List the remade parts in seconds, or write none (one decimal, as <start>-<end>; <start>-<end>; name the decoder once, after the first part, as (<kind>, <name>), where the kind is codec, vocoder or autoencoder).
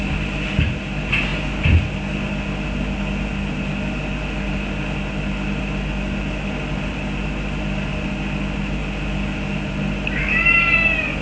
none